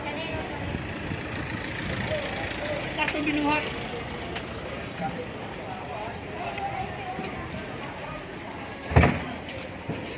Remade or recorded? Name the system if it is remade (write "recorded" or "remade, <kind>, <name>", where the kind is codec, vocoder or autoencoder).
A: recorded